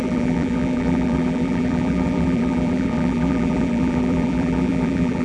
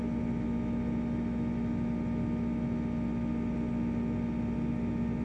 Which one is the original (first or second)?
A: second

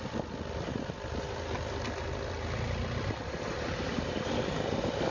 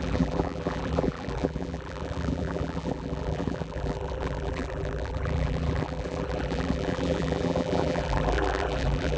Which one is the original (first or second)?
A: first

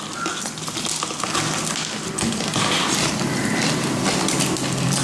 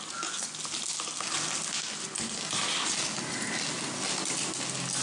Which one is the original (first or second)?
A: second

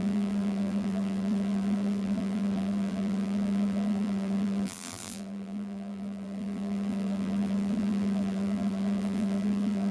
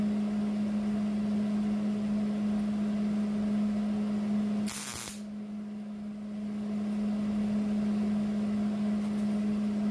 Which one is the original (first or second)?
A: second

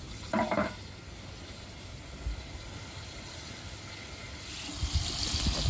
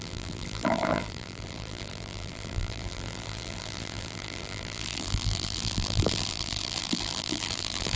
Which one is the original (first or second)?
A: first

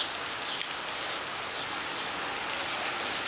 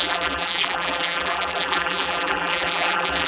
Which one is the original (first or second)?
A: first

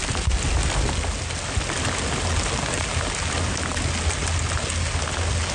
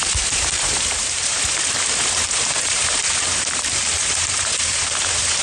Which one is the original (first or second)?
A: first